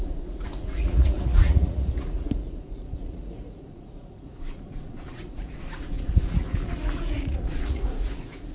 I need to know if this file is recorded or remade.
remade